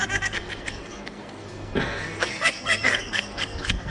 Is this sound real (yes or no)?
no